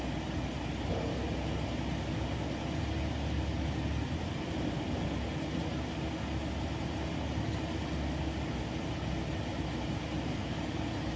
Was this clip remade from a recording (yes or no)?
no